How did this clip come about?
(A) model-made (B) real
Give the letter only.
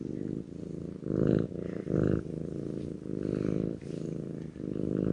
B